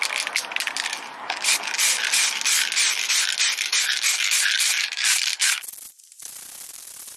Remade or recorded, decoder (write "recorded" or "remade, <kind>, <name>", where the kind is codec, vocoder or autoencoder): recorded